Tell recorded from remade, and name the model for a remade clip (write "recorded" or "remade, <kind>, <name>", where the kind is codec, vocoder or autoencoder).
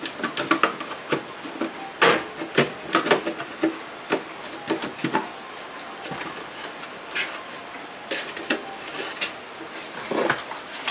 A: recorded